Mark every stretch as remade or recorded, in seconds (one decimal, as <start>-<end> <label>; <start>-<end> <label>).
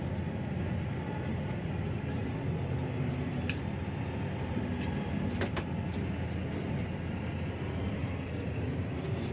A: 0.0-8.0 recorded; 8.0-9.3 remade